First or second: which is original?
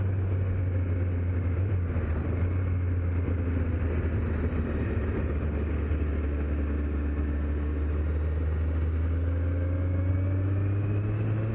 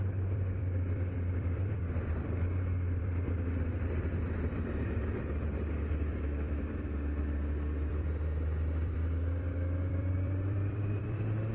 first